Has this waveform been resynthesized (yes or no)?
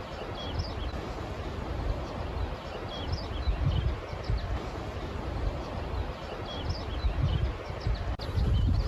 no